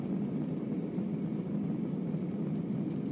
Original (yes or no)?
yes